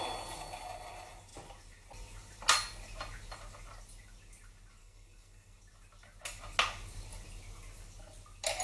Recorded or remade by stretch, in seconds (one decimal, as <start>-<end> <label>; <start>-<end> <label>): 0.0-4.8 recorded; 4.8-5.6 remade; 5.6-8.6 recorded